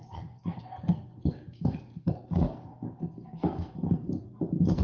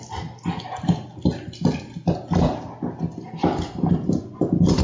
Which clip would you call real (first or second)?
second